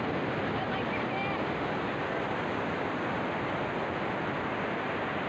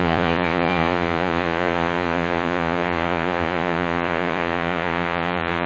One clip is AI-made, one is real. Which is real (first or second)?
first